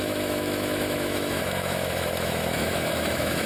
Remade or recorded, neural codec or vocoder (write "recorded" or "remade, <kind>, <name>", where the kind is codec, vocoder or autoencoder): remade, autoencoder, DAC-VAE